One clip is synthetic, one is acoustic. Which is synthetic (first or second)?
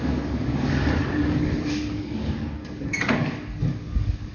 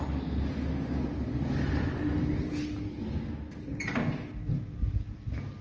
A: first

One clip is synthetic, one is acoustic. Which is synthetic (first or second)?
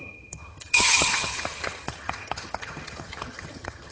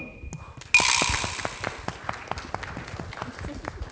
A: first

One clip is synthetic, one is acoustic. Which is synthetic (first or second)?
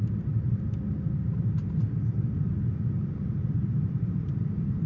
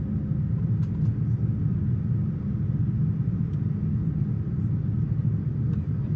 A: first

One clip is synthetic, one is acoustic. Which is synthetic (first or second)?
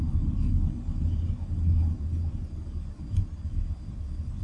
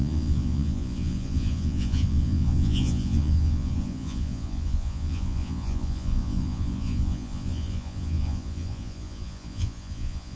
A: second